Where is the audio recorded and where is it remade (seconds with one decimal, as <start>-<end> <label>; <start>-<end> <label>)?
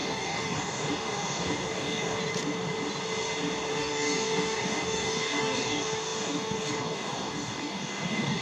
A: 0.0-2.2 remade; 2.2-3.7 recorded; 3.7-8.4 remade